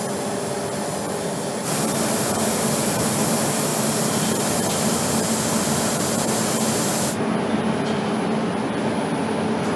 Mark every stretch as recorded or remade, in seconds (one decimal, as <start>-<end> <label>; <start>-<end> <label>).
0.0-9.8 recorded